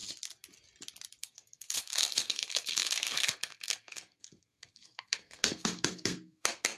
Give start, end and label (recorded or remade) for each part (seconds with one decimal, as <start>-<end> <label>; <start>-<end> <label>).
0.0-1.2 recorded; 1.2-6.8 remade